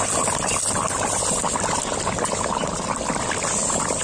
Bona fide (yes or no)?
no